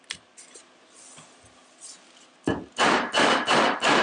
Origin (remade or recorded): recorded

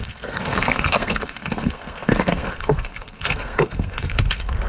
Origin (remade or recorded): remade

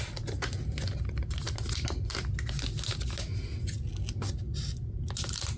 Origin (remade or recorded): recorded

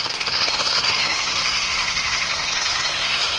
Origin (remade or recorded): remade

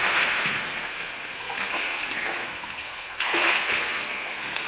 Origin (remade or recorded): remade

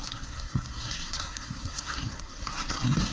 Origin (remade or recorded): remade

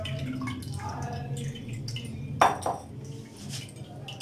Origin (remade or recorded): recorded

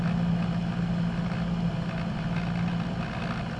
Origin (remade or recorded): recorded